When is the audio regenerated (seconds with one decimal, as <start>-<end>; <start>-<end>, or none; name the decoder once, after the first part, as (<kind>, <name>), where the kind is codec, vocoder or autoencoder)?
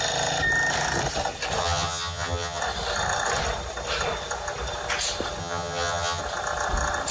1.6-2.6 (vocoder, HiFi-GAN); 5.4-6.2